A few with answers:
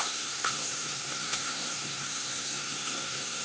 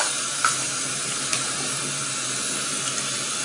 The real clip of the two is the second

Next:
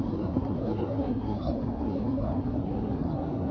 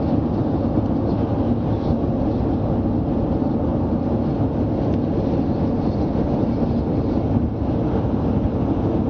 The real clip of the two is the second